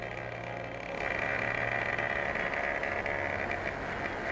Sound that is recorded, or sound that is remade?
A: recorded